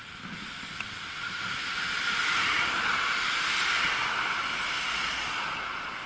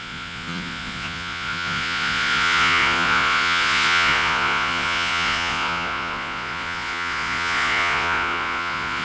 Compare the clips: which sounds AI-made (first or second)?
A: second